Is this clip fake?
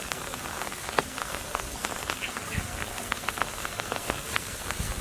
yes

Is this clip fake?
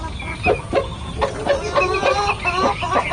no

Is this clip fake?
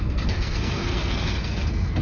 yes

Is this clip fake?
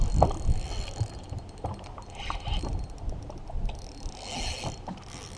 no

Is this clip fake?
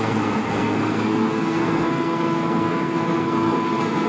yes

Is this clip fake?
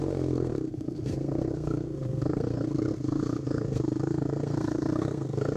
yes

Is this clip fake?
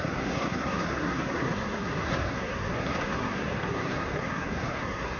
yes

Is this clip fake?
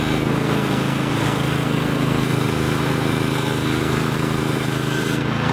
yes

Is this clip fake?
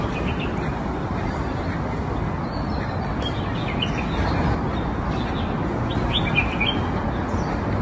no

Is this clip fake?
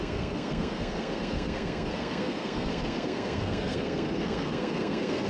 yes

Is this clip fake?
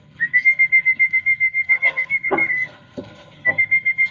yes